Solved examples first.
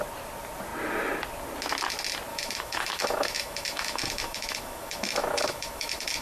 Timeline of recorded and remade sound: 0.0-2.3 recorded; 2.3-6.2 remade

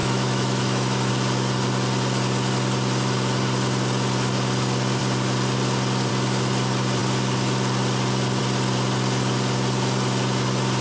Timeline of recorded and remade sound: 0.0-1.1 remade; 1.1-10.8 recorded

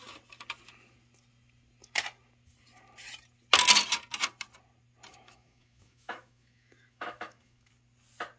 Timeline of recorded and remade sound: 0.0-5.1 recorded; 5.1-7.7 remade; 7.7-8.4 recorded

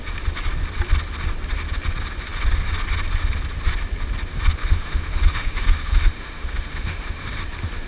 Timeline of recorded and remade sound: 0.0-4.6 recorded; 4.6-7.4 remade; 7.4-7.9 recorded